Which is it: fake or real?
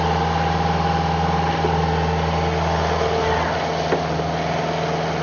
real